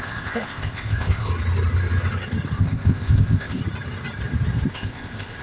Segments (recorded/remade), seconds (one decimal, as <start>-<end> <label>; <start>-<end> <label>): 0.0-1.3 remade; 1.3-2.6 recorded; 2.6-3.6 remade; 3.6-4.7 recorded; 4.7-5.4 remade